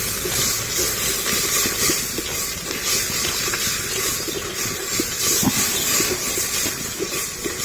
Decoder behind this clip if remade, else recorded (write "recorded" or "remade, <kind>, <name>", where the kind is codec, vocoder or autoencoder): recorded